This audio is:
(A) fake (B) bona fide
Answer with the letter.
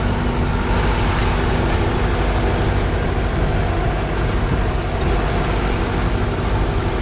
B